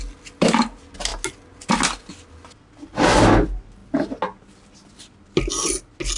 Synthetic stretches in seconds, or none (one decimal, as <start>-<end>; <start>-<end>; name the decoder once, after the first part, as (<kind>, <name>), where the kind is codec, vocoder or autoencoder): none